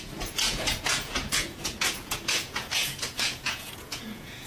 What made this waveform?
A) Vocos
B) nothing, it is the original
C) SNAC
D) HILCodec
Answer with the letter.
A